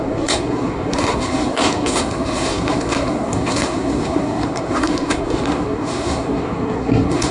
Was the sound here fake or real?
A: fake